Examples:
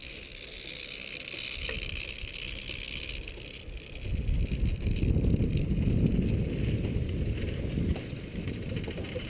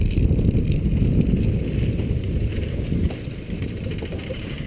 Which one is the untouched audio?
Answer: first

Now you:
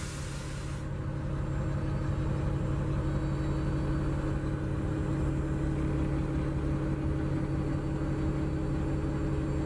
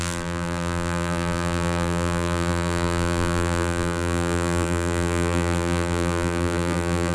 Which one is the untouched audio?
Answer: first